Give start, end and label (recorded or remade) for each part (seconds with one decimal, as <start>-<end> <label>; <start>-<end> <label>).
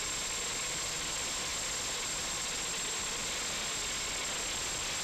0.0-5.0 recorded